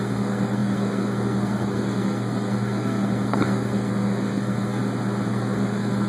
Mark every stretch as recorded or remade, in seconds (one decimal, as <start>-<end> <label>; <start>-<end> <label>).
0.0-4.8 remade; 4.8-5.3 recorded; 5.3-6.1 remade